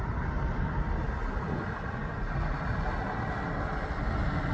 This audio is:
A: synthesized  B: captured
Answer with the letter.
B